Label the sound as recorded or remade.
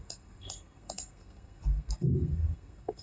remade